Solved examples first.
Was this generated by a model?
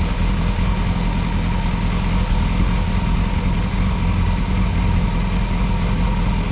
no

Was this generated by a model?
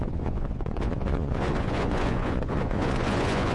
yes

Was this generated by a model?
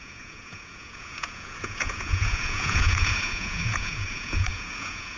yes